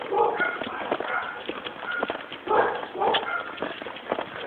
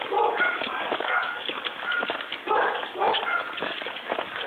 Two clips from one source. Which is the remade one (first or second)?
second